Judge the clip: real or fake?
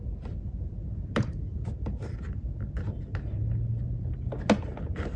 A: real